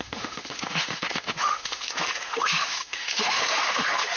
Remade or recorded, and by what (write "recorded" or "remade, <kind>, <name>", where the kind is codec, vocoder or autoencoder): remade, autoencoder, DAC-VAE